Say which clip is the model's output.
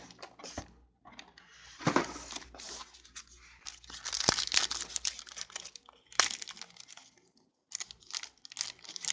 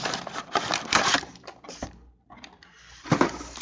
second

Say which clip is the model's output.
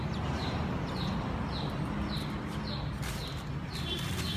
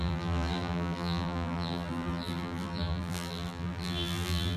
second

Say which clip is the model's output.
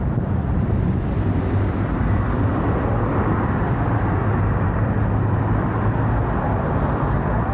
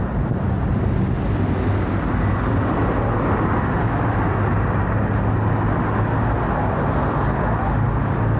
first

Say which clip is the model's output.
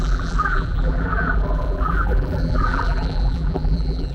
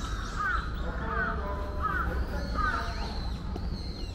first